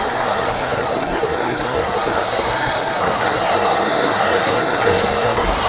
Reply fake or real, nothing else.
fake